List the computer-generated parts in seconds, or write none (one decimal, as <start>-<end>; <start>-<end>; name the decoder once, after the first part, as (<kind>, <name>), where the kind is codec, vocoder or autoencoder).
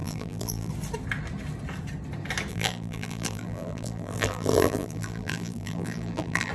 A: 0.0-0.7 (vocoder, BigVGAN v2); 2.5-6.5